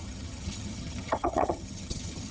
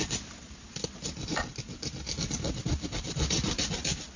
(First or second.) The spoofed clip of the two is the first